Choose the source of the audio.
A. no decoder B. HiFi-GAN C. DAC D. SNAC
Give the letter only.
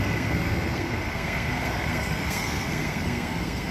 D